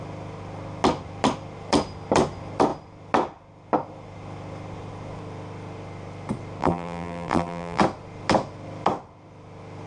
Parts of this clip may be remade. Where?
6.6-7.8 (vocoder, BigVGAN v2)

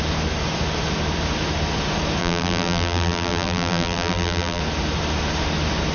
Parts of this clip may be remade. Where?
2.2-4.6 (vocoder, BigVGAN v2)

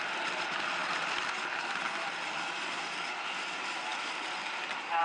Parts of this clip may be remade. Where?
0.8-2.9 (vocoder, BigVGAN v2); 3.9-5.0

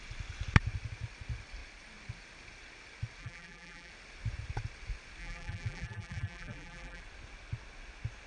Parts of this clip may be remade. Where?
3.2-3.9 (vocoder, BigVGAN v2); 5.2-7.0

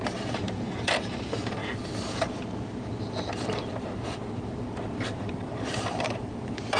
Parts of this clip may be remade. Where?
0.0-1.6 (vocoder, BigVGAN v2); 5.3-6.8

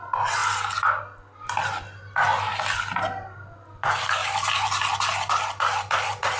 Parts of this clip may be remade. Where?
0.0-0.4 (vocoder, BigVGAN v2); 1.0-2.3; 3.2-6.4